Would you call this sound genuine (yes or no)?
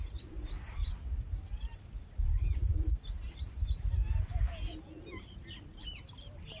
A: yes